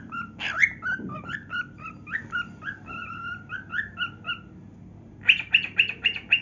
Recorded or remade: recorded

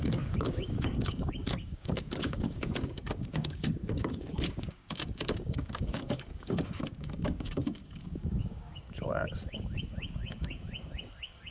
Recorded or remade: remade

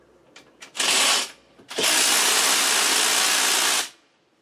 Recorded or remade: recorded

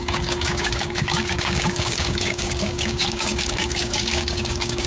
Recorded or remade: remade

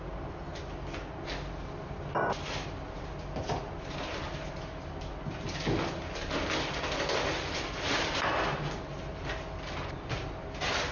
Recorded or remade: recorded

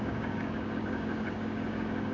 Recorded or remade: remade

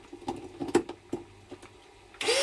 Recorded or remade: recorded